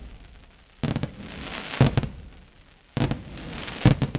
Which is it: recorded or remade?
recorded